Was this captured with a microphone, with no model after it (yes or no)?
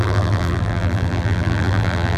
no